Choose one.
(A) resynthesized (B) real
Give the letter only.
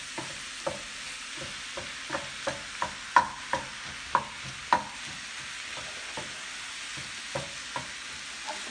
B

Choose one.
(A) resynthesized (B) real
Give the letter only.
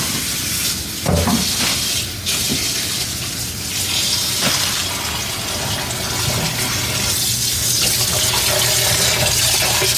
B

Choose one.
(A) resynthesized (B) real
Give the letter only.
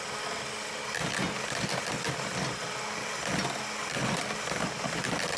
B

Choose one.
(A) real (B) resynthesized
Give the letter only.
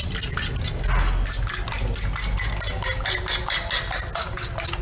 A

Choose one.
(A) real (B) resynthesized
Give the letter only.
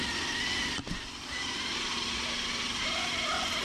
A